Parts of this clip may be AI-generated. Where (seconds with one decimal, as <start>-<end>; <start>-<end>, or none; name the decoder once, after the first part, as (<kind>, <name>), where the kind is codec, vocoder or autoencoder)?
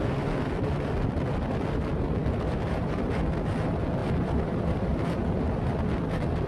2.2-3.0 (vocoder, BigVGAN v2); 4.0-5.1